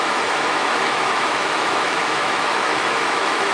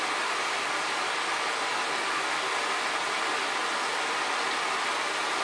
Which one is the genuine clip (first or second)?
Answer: second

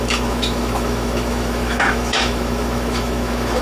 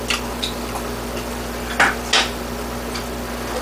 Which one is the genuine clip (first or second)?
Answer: second